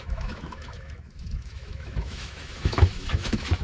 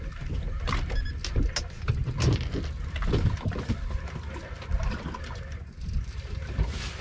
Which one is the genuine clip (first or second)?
second